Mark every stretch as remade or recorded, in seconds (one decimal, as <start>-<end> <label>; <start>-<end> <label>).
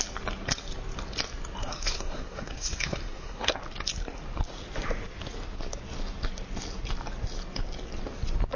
0.0-1.6 recorded; 1.6-3.6 remade; 3.6-8.6 recorded